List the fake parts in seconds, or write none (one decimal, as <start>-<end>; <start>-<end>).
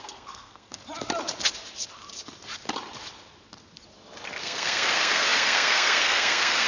0.0-0.8; 4.4-6.7